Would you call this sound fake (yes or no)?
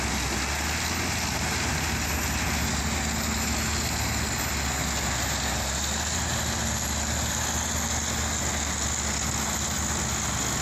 no